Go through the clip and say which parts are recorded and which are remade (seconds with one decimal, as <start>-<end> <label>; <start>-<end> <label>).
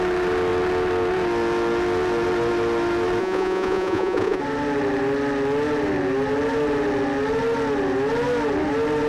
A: 0.0-3.2 recorded; 3.2-4.4 remade; 4.4-9.1 recorded